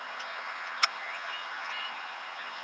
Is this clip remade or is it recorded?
remade